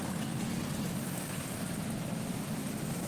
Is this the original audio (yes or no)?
yes